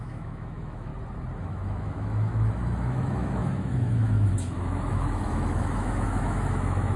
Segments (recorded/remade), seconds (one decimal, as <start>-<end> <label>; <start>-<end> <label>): 0.0-0.9 remade; 0.9-1.4 recorded; 1.4-7.0 remade